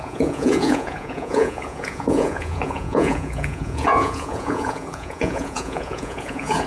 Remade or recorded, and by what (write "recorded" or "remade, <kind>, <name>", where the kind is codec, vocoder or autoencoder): remade, vocoder, Vocos